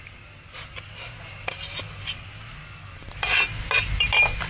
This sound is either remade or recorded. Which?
recorded